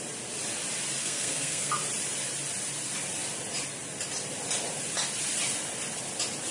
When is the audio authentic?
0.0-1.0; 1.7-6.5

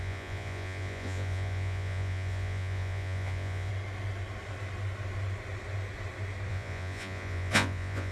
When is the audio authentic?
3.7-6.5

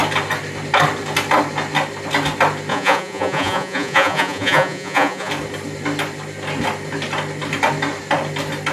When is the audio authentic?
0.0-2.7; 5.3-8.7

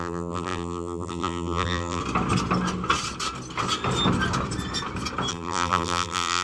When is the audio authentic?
2.0-5.3

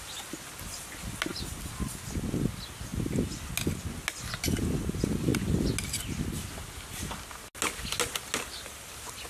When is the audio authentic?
0.0-9.3

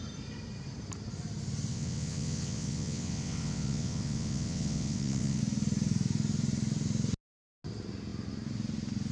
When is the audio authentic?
0.0-1.7; 5.4-9.1

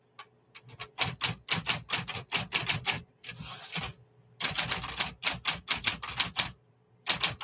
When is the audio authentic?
0.0-7.4

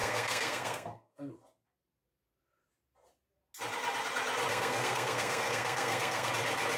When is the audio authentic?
1.3-4.5; 6.3-6.8